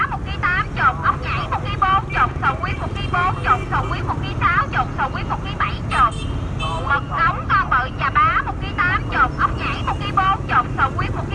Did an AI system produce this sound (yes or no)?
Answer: no